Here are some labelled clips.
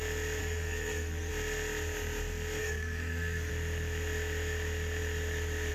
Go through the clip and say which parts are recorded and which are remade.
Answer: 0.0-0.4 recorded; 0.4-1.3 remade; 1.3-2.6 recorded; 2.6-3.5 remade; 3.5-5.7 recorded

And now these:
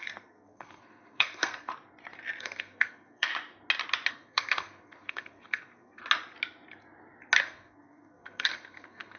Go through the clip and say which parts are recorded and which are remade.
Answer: 0.0-1.7 remade; 1.7-2.4 recorded; 2.4-3.3 remade; 3.3-4.1 recorded; 4.1-6.0 remade; 6.0-7.4 recorded; 7.4-9.2 remade